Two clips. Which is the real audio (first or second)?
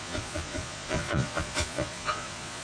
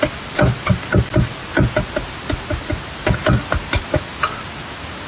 second